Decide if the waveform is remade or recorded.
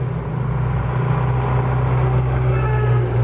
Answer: recorded